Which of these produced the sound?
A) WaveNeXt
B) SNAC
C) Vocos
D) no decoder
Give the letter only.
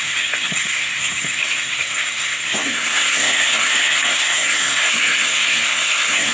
B